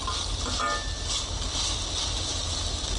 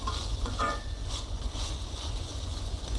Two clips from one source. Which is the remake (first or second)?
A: second